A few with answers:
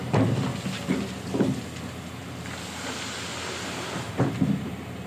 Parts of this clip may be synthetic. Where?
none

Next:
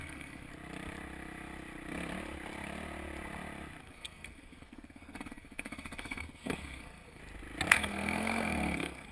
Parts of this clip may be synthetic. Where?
0.0-0.5; 3.8-7.2; 7.7-9.1

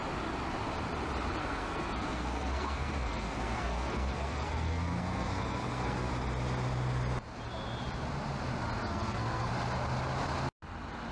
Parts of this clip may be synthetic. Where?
1.4-6.1; 8.8-9.5

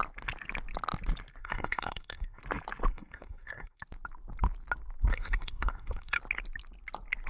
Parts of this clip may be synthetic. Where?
1.4-2.4; 2.9-3.8; 5.1-6.2

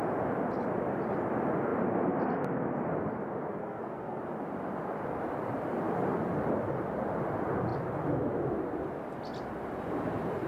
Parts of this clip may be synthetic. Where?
3.6-4.2

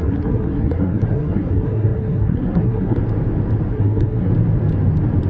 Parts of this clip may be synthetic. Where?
0.0-3.0; 3.7-4.3

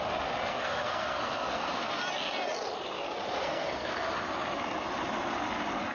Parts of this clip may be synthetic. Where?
0.5-2.0; 3.4-3.9